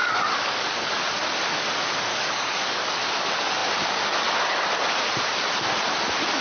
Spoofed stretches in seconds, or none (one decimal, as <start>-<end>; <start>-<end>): 0.0-0.9; 2.1-3.0